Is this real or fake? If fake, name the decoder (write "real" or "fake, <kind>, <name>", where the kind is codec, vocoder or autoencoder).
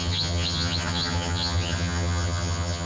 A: fake, vocoder, HiFi-GAN